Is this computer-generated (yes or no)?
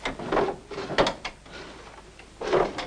no